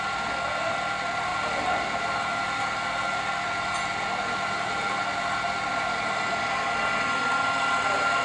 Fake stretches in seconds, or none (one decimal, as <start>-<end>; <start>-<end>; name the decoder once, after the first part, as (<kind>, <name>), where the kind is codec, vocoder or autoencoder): none